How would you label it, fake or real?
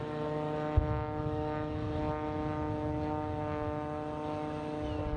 real